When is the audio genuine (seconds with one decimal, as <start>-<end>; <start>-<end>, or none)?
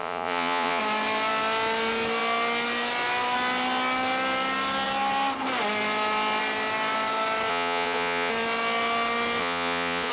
0.8-7.5; 8.3-9.4